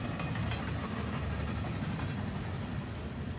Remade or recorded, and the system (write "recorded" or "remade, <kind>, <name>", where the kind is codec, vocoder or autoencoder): recorded